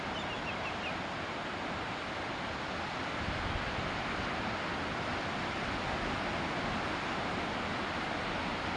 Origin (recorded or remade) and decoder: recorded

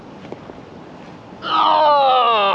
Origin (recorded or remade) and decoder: recorded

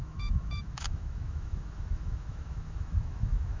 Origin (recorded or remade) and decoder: remade, autoencoder, DAC-VAE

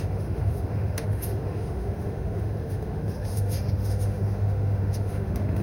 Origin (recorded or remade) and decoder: remade, autoencoder, DAC-VAE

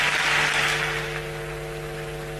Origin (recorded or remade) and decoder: recorded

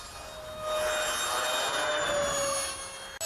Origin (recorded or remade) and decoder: recorded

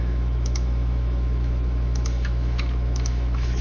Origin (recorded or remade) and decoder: remade, autoencoder, DAC-VAE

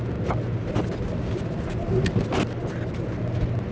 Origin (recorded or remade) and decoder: recorded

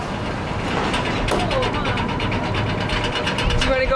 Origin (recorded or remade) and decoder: recorded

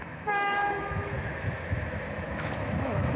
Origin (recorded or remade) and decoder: remade, autoencoder, DAC-VAE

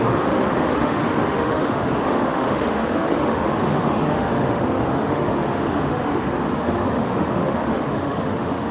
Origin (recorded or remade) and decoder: remade, autoencoder, DAC-VAE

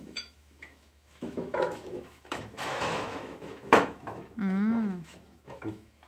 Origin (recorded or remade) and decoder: remade, autoencoder, DAC-VAE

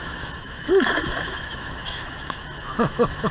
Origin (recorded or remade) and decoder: remade, autoencoder, DAC-VAE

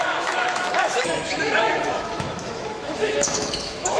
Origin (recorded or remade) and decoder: remade, autoencoder, DAC-VAE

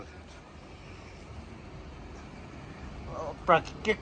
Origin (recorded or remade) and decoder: recorded